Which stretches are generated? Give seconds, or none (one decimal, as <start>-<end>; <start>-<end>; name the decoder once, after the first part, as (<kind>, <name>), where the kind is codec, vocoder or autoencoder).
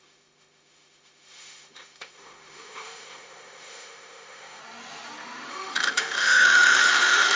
0.0-4.6 (autoencoder, DAC-VAE); 5.5-7.4